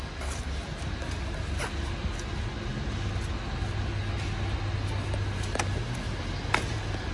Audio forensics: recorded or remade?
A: recorded